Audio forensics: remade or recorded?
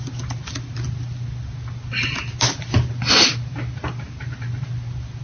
recorded